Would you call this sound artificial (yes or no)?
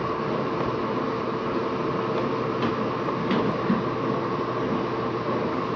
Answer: no